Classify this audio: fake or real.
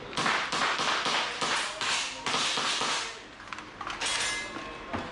real